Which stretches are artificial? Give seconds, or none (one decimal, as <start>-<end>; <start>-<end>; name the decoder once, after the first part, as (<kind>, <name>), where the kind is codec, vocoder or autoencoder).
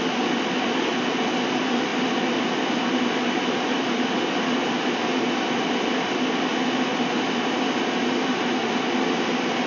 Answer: none